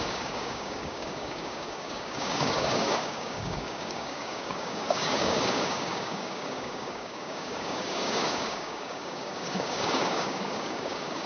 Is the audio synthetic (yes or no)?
yes